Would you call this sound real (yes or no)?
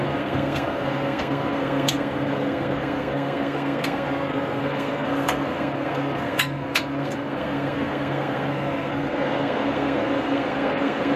no